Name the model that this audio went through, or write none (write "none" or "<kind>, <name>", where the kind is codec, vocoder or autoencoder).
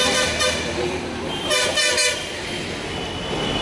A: none